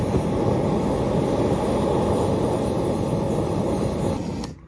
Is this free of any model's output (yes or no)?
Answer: yes